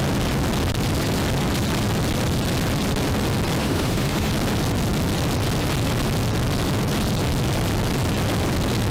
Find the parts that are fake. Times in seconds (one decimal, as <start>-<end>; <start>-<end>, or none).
3.6-4.3